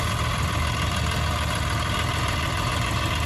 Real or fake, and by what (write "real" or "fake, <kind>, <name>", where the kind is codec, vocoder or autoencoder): real